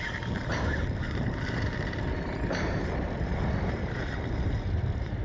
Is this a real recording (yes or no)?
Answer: no